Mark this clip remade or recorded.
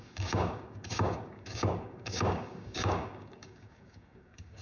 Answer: remade